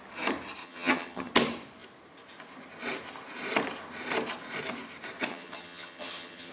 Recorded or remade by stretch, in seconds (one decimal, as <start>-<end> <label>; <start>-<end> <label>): 0.0-0.6 recorded; 0.6-1.3 remade; 1.3-5.3 recorded; 5.3-6.5 remade